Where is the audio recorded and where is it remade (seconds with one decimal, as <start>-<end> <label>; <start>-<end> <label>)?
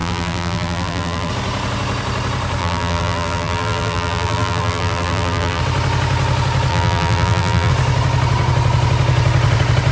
0.0-1.3 remade; 1.3-2.6 recorded; 2.6-5.6 remade; 5.6-6.7 recorded; 6.7-7.7 remade; 7.7-9.9 recorded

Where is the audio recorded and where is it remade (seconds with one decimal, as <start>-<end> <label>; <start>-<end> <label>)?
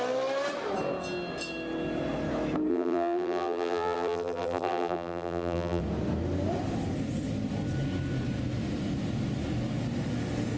0.0-2.7 recorded; 2.7-5.8 remade; 5.8-10.6 recorded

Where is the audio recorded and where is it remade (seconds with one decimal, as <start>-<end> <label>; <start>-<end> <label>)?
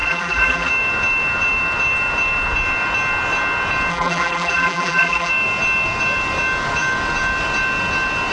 0.0-0.7 remade; 0.7-3.9 recorded; 3.9-5.3 remade; 5.3-8.3 recorded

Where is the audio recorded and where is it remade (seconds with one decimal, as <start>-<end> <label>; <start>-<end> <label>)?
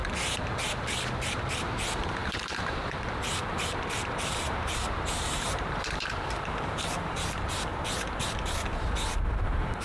0.0-1.3 recorded; 1.3-7.7 remade; 7.7-9.3 recorded; 9.3-9.8 remade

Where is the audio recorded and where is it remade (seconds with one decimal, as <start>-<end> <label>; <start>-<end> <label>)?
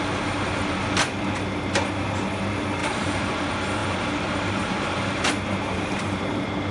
0.0-2.8 recorded; 2.8-3.4 remade; 3.4-3.8 recorded; 3.8-6.2 remade; 6.2-6.7 recorded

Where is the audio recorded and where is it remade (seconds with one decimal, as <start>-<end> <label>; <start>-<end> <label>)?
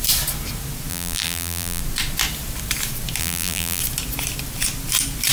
0.0-0.9 recorded; 0.9-1.8 remade; 1.8-3.2 recorded; 3.2-3.8 remade; 3.8-5.3 recorded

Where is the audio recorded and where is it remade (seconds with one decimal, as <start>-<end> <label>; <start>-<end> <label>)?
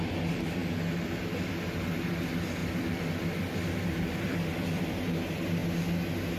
0.0-5.6 remade; 5.6-6.4 recorded